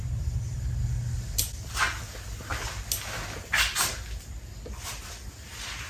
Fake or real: real